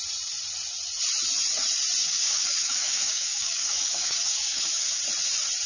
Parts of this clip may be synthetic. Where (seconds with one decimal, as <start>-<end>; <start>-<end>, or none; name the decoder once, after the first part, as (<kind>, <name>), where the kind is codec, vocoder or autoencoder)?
2.0-5.0 (codec, DAC)